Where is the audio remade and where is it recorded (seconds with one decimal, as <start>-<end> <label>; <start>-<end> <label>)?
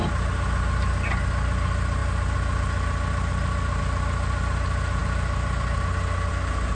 0.0-6.7 recorded